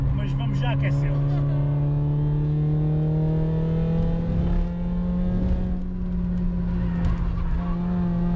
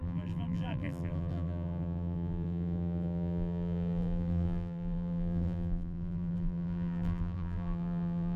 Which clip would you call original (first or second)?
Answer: first